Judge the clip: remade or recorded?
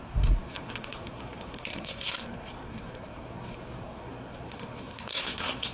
remade